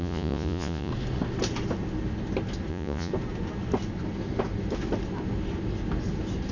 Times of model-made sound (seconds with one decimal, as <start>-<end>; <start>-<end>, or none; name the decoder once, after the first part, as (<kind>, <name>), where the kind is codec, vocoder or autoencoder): 0.0-0.9 (vocoder, Vocos); 2.7-3.1